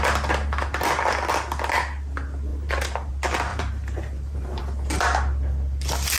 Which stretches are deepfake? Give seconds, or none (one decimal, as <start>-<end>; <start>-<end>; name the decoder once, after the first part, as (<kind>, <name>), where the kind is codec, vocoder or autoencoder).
2.5-3.1 (vocoder, BigVGAN v2); 3.5-4.6